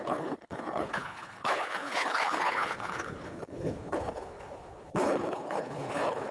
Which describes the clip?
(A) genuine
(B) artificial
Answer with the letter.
B